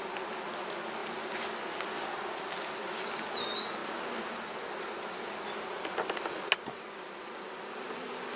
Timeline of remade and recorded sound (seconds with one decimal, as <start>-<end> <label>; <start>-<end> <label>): 0.0-8.4 recorded